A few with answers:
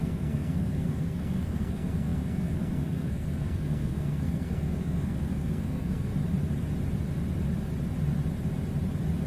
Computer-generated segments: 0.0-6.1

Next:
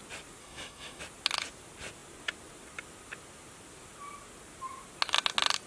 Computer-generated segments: 0.4-1.0

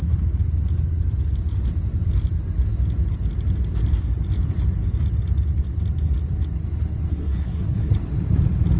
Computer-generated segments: 7.1-7.9

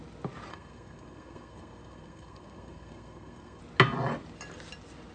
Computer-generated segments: 0.5-3.6

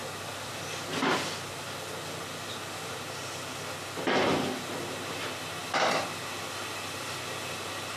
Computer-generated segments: none

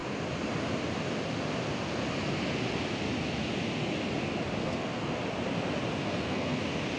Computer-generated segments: 4.6-5.2; 6.0-6.6

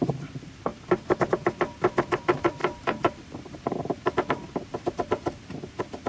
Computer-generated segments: none

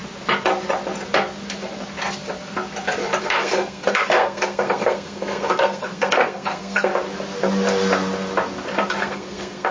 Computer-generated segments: 3.2-6.9; 9.0-9.7